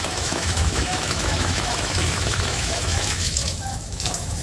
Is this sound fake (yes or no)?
yes